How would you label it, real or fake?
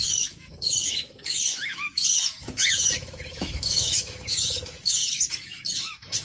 fake